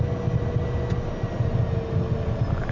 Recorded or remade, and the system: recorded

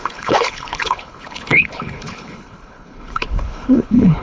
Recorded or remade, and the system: remade, codec, HILCodec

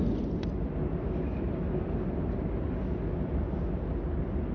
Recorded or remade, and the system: recorded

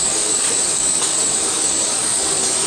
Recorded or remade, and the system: remade, codec, DAC